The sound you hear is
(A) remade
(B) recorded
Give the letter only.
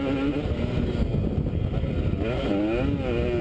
B